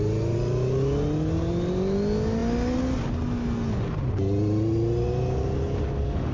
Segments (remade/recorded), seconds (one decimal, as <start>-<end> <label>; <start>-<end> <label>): 0.0-6.3 recorded